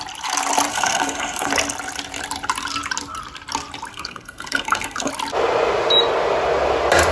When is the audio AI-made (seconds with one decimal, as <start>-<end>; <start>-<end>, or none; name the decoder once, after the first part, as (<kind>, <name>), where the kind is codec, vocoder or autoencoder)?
0.7-1.5 (codec, SNAC); 3.9-5.1